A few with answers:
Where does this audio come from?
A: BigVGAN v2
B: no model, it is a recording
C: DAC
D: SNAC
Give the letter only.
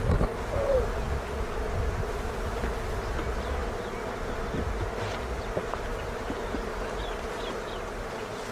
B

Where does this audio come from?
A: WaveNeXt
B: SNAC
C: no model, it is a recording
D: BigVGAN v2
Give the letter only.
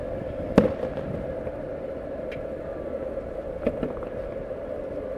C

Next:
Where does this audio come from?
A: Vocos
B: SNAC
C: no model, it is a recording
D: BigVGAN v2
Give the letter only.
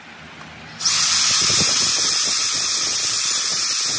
C